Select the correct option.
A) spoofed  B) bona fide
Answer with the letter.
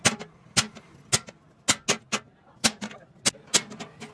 B